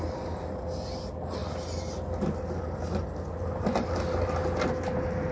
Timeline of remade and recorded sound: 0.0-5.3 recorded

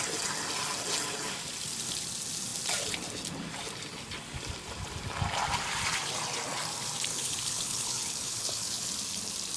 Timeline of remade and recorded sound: 0.0-7.1 recorded; 7.1-8.9 remade; 8.9-9.6 recorded

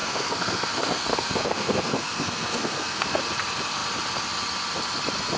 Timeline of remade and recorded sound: 0.0-3.2 remade; 3.2-5.4 recorded

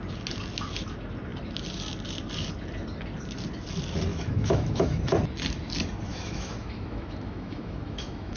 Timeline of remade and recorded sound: 0.0-4.1 recorded; 4.1-5.0 remade; 5.0-6.1 recorded; 6.1-8.4 remade

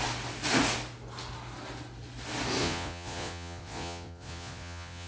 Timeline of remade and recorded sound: 0.0-2.6 recorded; 2.6-5.1 remade

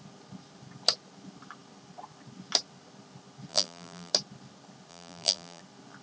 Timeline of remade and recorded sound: 0.0-3.5 recorded; 3.5-4.1 remade; 4.1-4.9 recorded; 4.9-5.6 remade; 5.6-6.0 recorded

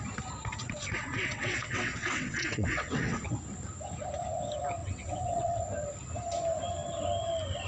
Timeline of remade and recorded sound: 0.0-0.6 recorded; 0.6-3.2 remade; 3.2-4.8 recorded; 4.8-5.6 remade; 5.6-7.7 recorded